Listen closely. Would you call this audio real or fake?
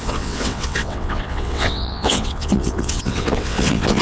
fake